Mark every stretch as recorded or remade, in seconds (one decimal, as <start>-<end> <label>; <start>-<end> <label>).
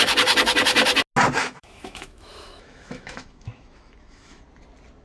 0.0-1.4 recorded; 1.4-4.4 remade; 4.4-5.0 recorded